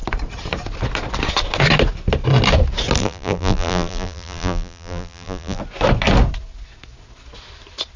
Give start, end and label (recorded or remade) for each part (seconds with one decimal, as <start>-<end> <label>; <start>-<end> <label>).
0.0-3.0 recorded; 3.0-5.6 remade; 5.6-8.0 recorded